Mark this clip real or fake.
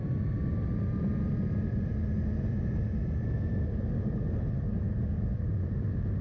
real